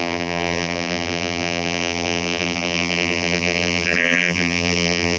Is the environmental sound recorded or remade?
remade